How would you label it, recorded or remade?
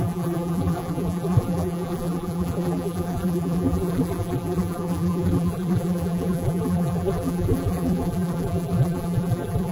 remade